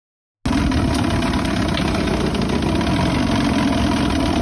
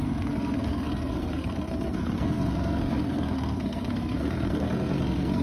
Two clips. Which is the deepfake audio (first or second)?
second